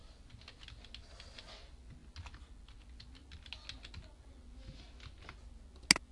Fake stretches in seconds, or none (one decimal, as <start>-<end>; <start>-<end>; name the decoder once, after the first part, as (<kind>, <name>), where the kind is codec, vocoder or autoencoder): none